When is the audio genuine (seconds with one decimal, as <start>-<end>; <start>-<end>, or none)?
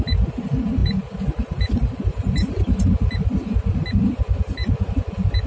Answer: 0.0-5.5